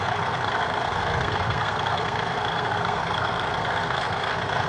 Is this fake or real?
fake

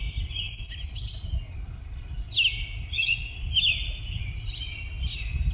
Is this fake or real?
real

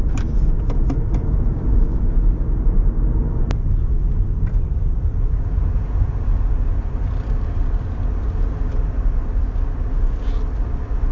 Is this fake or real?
real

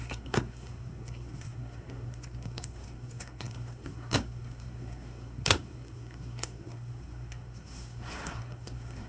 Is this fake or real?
fake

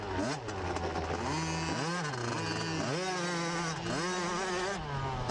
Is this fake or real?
real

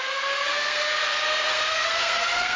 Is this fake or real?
fake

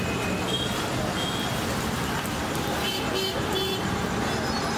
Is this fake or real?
real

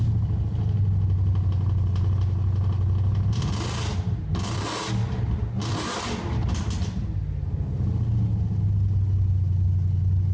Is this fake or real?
real